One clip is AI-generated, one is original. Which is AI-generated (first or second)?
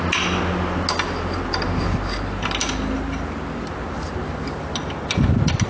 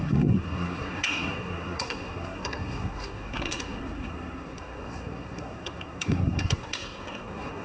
second